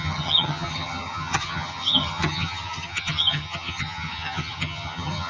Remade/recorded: remade